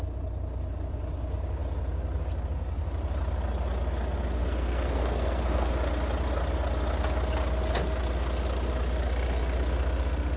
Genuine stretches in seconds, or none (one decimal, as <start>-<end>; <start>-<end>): 0.0-4.4; 5.7-10.4